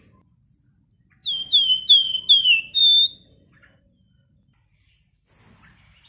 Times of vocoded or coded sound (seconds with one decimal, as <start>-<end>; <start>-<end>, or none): none